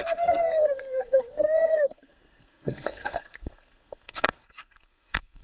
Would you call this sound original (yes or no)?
no